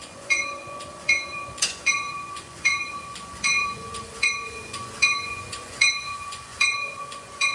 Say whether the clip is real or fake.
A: fake